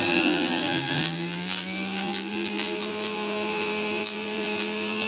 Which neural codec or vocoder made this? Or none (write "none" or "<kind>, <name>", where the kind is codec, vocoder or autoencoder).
vocoder, BigVGAN v2